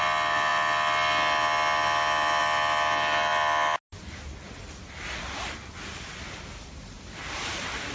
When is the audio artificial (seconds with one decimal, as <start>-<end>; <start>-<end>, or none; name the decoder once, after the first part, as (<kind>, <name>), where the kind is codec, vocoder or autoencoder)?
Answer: none